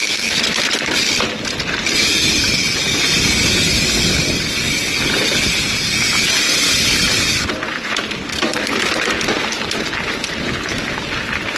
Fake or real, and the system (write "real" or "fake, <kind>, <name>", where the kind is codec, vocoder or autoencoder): real